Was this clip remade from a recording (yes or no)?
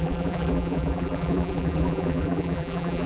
yes